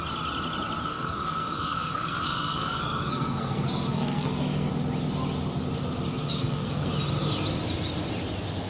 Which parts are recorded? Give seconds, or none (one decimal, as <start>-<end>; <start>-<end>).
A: 0.0-0.9; 4.7-6.3; 6.9-8.7